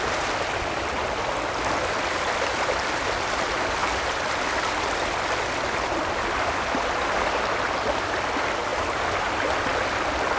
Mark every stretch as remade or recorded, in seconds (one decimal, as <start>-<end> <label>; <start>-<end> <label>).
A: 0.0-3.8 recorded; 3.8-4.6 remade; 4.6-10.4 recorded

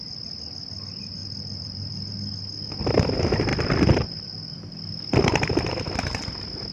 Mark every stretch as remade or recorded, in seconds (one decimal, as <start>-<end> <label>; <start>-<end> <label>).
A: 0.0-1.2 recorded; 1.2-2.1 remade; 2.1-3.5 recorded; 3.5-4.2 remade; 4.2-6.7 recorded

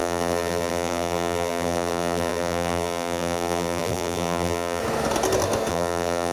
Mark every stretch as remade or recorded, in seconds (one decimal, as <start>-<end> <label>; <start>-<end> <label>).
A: 0.0-4.8 remade; 4.8-5.7 recorded; 5.7-6.3 remade

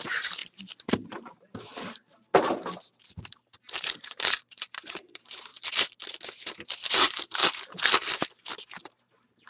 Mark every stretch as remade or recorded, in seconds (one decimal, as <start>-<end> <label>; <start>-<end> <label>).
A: 0.0-2.3 remade; 2.3-3.1 recorded; 3.1-5.5 remade; 5.5-6.9 recorded; 6.9-7.4 remade; 7.4-8.8 recorded; 8.8-9.5 remade

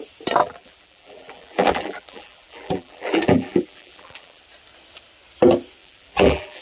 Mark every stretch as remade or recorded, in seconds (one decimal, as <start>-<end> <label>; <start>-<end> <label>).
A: 0.0-0.4 recorded; 0.4-4.4 remade; 4.4-5.8 recorded; 5.8-6.6 remade

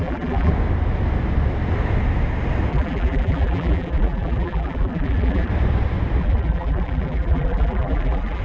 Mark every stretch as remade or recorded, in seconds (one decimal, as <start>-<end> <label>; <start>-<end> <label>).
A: 0.0-0.5 remade; 0.5-2.7 recorded; 2.7-5.5 remade; 5.5-6.2 recorded; 6.2-8.4 remade

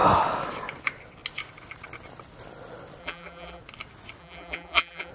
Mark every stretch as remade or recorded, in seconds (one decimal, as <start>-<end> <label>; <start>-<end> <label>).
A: 0.0-3.0 recorded; 3.0-3.6 remade; 3.6-4.2 recorded; 4.2-5.1 remade